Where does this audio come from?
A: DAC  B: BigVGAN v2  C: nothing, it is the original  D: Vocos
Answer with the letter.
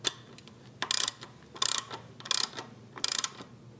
C